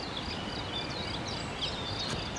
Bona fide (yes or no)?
yes